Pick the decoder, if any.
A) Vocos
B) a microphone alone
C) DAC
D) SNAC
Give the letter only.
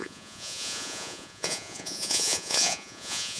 A